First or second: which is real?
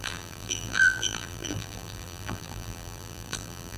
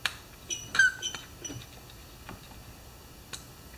second